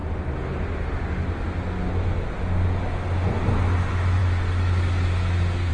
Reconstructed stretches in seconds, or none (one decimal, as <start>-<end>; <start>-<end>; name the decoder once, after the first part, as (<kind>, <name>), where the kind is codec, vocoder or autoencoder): none